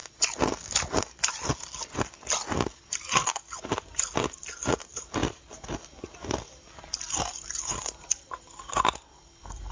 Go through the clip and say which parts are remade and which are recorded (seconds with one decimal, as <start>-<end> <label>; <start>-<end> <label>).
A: 0.0-9.7 recorded